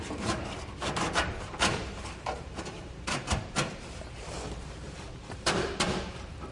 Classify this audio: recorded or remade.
remade